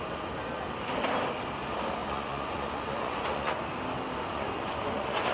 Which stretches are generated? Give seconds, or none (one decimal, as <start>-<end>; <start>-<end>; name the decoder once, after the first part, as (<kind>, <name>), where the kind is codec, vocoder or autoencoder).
2.0-3.6 (vocoder, Vocos); 4.3-5.3